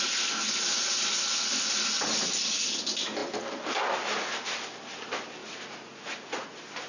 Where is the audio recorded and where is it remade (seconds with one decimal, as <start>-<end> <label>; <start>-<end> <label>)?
0.0-5.4 recorded; 5.4-6.5 remade; 6.5-6.9 recorded